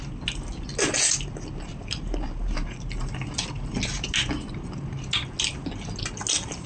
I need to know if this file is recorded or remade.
recorded